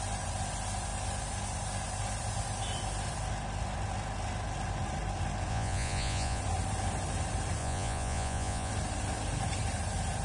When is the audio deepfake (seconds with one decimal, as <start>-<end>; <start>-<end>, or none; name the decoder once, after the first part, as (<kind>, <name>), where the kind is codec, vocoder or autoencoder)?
5.5-6.4 (vocoder, Vocos); 7.6-8.7